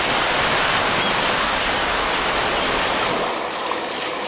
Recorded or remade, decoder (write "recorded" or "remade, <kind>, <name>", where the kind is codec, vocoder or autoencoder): recorded